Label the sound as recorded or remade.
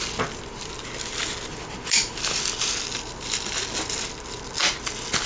recorded